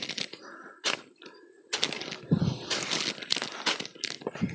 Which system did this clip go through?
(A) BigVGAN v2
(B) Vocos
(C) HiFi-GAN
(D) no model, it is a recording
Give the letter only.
D